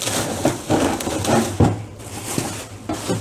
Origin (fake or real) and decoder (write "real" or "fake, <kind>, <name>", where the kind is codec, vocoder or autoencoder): real